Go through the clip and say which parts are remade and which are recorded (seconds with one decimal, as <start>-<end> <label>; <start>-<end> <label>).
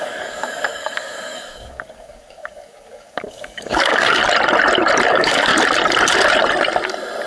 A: 0.0-4.2 remade; 4.2-5.1 recorded; 5.1-5.5 remade; 5.5-7.3 recorded